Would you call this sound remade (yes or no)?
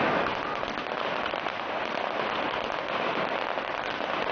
no